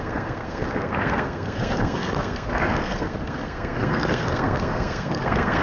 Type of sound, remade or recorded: remade